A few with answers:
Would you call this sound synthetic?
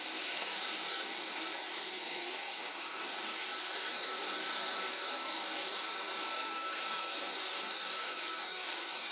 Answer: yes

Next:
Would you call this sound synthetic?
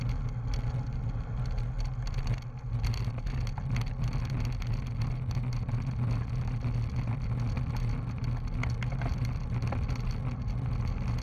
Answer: no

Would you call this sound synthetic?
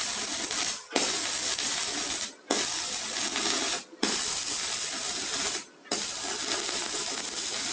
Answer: no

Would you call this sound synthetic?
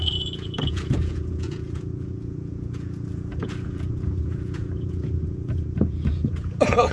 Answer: yes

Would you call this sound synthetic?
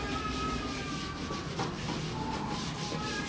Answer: no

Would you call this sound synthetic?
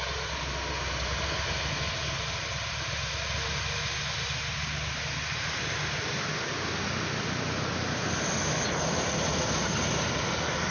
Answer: no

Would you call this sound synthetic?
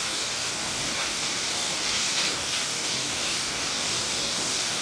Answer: yes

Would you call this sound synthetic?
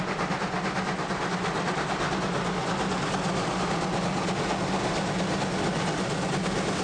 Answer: no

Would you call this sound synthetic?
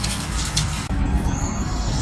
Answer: yes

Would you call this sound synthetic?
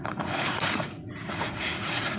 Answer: yes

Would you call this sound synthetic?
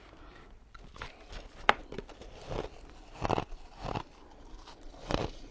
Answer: yes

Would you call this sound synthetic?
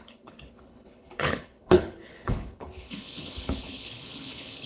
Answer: yes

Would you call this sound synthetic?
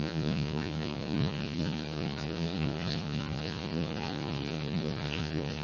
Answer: yes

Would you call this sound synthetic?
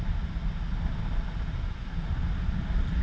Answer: no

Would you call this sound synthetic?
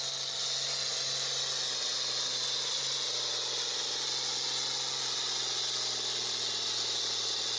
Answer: no